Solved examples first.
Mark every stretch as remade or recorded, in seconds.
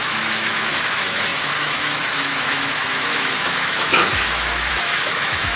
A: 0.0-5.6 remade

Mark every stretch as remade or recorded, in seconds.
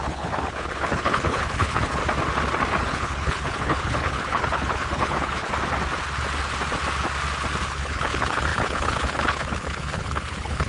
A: 0.0-2.0 remade; 2.0-2.8 recorded; 2.8-5.5 remade; 5.5-7.6 recorded; 7.6-10.7 remade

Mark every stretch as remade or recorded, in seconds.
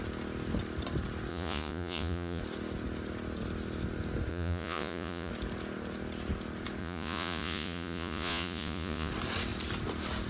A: 0.0-1.3 recorded; 1.3-2.4 remade; 2.4-4.3 recorded; 4.3-5.3 remade; 5.3-6.8 recorded; 6.8-9.1 remade; 9.1-10.3 recorded